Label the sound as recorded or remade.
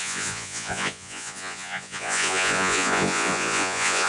remade